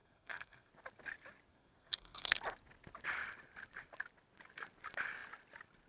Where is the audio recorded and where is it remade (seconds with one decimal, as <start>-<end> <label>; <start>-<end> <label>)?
0.0-0.7 remade; 0.7-1.5 recorded; 1.5-2.4 remade; 2.4-5.9 recorded